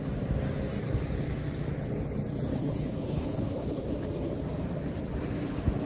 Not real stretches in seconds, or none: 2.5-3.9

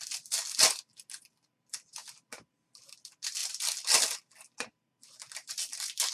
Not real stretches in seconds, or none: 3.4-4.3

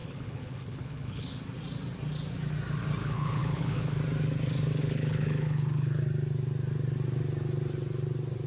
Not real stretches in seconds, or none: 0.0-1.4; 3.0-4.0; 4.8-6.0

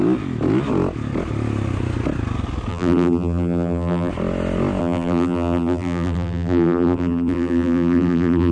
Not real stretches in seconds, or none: 2.7-4.1; 4.8-8.5

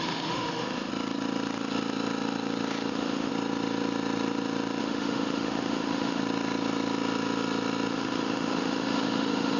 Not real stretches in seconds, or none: 0.0-0.9; 2.9-3.3; 4.8-6.2; 7.9-9.6

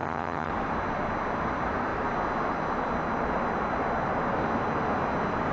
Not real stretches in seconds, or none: 0.0-0.5

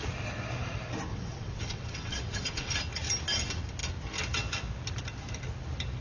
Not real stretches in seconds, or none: 1.1-2.7

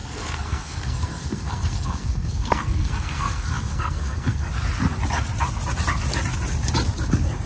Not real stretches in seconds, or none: 0.0-4.5